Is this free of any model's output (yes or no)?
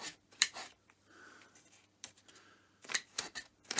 no